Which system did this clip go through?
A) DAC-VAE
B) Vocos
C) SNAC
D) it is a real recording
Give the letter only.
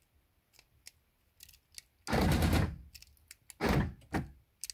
D